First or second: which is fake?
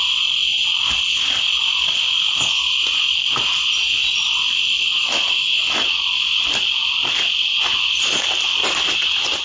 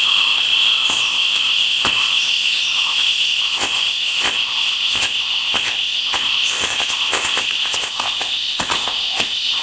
second